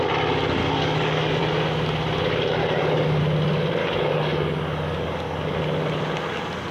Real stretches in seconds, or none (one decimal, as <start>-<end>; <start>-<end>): 0.0-0.6; 1.4-2.6; 3.2-3.8; 5.6-6.7